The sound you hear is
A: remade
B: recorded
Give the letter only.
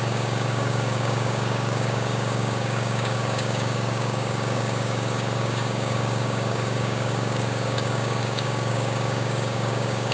A